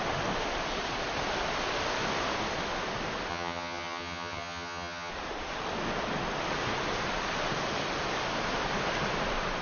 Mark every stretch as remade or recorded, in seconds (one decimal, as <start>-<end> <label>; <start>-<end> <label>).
0.0-3.3 recorded; 3.3-5.1 remade; 5.1-9.6 recorded